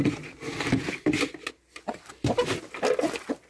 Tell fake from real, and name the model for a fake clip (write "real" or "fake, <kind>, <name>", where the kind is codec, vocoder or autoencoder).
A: real